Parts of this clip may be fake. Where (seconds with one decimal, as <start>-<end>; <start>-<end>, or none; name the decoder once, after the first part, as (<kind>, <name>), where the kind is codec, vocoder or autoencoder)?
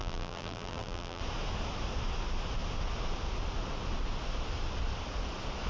0.0-1.2 (vocoder, BigVGAN v2)